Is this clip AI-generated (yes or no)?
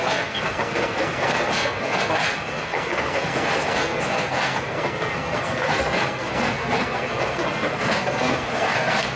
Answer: yes